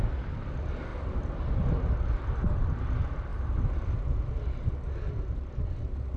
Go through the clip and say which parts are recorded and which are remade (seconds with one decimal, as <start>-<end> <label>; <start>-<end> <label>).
0.0-3.3 remade; 3.3-5.3 recorded; 5.3-6.2 remade